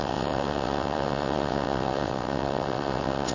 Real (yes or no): no